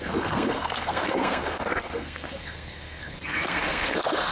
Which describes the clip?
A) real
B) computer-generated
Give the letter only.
B